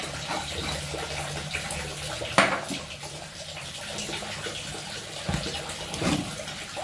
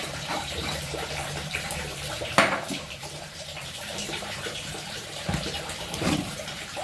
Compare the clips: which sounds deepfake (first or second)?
second